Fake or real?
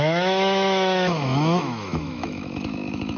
fake